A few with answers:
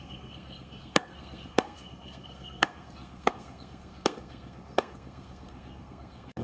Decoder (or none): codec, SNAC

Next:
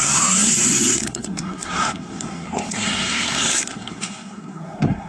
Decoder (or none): codec, SNAC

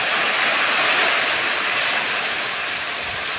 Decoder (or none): none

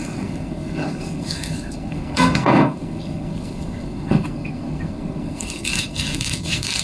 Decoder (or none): codec, SNAC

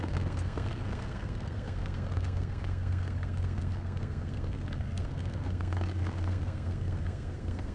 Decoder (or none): codec, SNAC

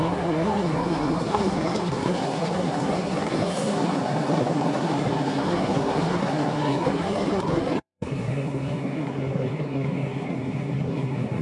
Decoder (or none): codec, SNAC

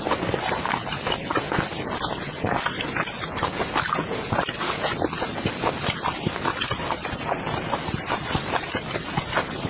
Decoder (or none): none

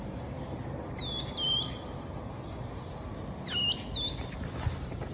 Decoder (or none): none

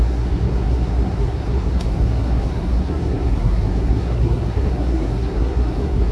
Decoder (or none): codec, SNAC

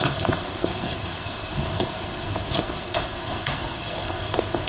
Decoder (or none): codec, SNAC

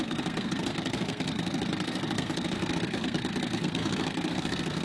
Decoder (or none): codec, SNAC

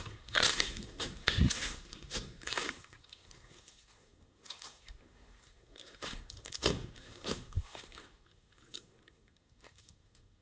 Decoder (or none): codec, SNAC